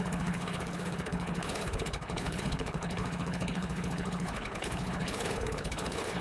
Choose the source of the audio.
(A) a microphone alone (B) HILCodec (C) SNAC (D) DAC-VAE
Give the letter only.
B